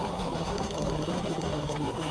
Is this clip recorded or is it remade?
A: remade